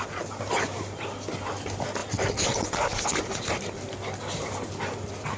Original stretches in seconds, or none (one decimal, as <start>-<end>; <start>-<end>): 0.0-5.4